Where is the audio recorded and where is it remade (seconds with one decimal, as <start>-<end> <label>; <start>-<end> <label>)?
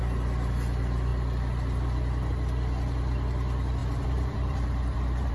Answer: 0.0-3.8 recorded; 3.8-5.3 remade